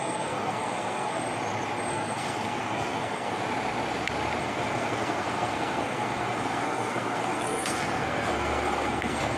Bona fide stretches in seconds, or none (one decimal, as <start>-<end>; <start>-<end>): 1.2-1.9; 3.4-4.4